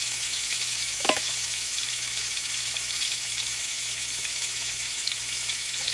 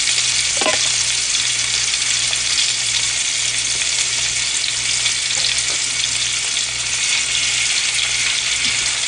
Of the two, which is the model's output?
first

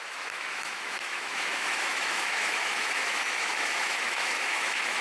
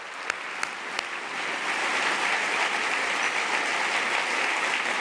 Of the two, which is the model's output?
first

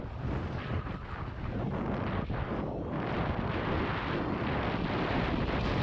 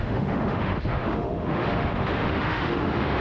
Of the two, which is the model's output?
second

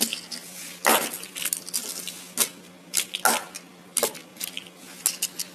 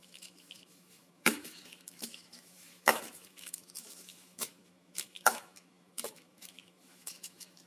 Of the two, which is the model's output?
second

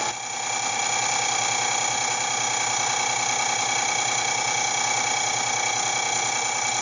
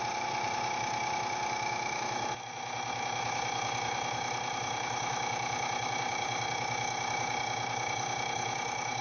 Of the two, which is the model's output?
second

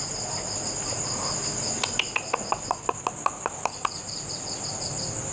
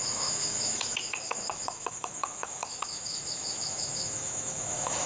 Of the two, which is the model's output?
second